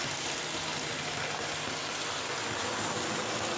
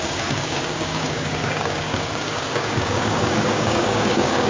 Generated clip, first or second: second